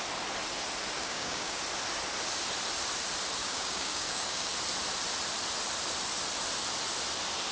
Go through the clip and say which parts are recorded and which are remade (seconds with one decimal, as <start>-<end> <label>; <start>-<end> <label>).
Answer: 0.0-1.0 recorded; 1.0-1.6 remade; 1.6-3.4 recorded; 3.4-4.5 remade; 4.5-7.5 recorded